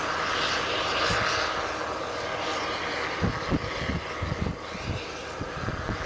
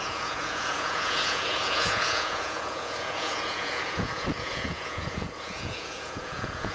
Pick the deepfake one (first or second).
second